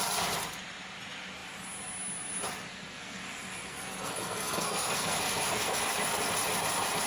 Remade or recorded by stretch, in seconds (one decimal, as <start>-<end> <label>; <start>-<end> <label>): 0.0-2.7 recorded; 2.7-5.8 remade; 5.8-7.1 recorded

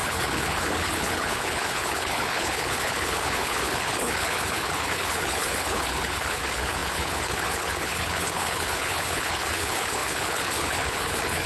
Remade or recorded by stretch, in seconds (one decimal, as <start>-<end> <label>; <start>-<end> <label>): 0.0-11.5 remade

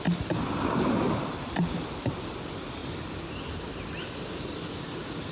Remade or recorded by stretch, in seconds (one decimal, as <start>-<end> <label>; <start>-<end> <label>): 0.0-5.3 recorded